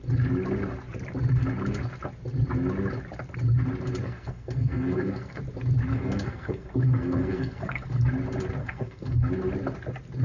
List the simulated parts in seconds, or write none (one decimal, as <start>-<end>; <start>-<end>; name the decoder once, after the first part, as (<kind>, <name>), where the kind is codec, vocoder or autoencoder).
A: 4.0-5.4 (codec, SNAC); 5.9-8.0; 8.6-9.3